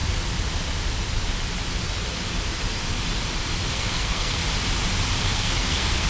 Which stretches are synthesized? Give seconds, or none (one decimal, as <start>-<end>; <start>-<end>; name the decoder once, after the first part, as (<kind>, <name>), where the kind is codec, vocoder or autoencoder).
3.7-4.4 (codec, SNAC); 5.2-6.1